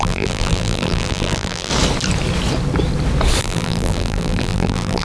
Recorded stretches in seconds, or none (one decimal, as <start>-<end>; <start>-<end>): 1.7-3.4